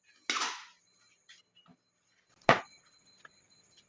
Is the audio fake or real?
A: real